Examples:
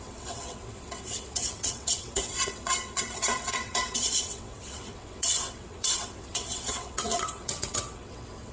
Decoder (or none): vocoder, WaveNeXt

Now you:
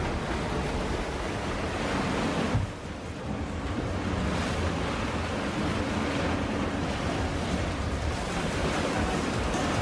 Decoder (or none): none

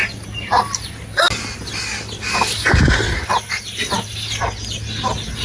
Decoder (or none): none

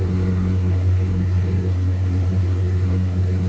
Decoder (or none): codec, SNAC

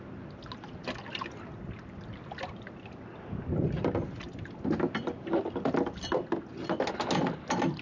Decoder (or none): none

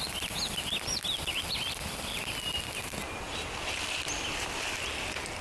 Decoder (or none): none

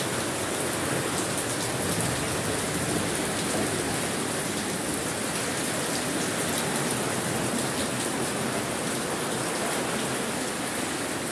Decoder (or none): none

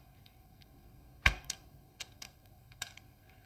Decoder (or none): codec, SNAC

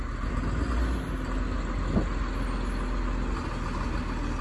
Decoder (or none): none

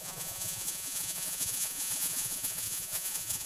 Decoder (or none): vocoder, Vocos